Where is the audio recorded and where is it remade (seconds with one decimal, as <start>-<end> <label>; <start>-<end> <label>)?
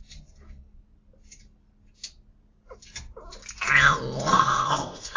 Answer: 0.0-4.3 recorded; 4.3-5.2 remade